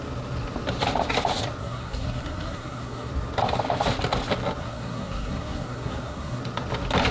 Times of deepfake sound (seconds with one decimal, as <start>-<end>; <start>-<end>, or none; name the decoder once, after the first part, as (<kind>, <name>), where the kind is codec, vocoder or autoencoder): 1.6-3.1 (codec, SNAC); 4.6-6.4